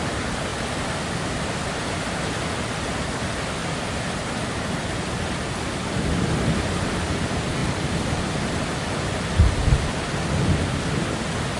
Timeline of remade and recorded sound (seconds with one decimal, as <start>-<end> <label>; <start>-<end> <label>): 0.0-3.6 recorded; 3.6-5.7 remade; 5.7-11.6 recorded